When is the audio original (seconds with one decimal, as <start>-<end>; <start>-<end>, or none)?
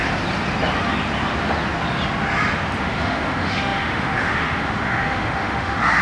0.0-2.8